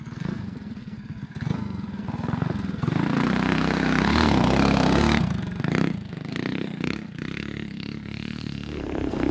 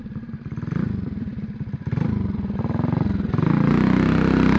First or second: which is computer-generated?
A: first